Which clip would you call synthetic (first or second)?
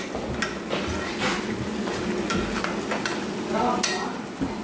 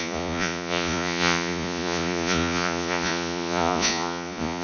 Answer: second